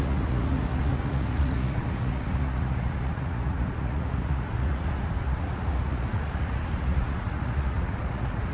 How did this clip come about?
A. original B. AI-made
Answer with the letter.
B